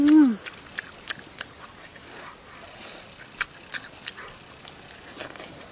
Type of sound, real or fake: real